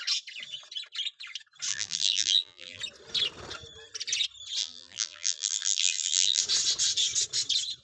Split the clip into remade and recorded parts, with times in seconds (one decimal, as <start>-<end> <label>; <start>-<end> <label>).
0.0-1.7 recorded; 1.7-2.8 remade; 2.8-4.6 recorded; 4.6-6.4 remade; 6.4-7.8 recorded